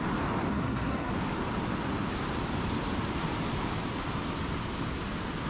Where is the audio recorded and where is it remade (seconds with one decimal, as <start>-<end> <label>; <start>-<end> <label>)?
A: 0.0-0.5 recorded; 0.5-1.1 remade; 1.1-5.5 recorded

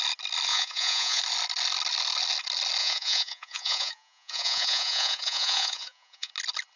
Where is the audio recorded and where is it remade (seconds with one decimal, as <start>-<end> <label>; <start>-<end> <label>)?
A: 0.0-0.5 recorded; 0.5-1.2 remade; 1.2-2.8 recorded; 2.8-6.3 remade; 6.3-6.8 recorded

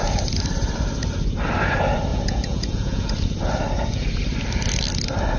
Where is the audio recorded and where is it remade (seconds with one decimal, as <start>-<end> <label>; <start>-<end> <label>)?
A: 0.0-2.1 recorded; 2.1-3.1 remade; 3.1-5.4 recorded